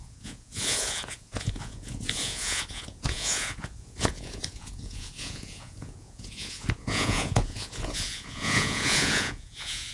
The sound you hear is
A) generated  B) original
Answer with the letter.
A